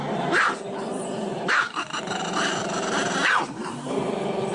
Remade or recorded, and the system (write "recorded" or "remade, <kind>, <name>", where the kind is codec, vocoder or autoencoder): remade, vocoder, BigVGAN v2